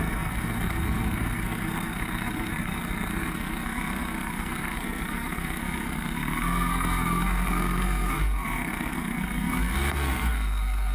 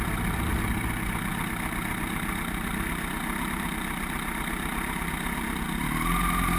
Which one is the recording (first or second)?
second